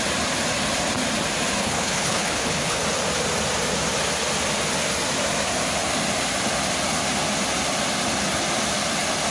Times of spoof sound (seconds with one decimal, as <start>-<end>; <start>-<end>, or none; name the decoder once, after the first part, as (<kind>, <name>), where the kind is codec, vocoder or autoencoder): 1.6-2.8 (codec, HILCodec)